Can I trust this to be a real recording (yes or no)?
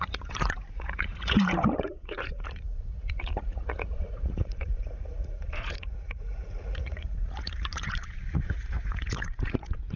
no